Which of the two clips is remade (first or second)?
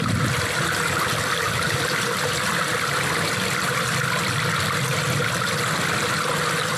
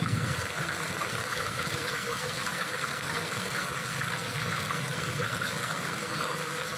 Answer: second